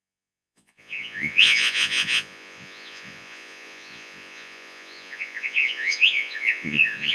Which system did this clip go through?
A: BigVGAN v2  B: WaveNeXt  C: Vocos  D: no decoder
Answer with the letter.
C